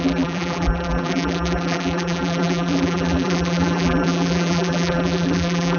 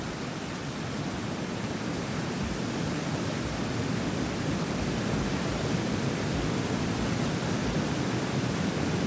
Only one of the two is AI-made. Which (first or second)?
first